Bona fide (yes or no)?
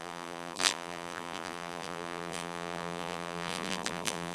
no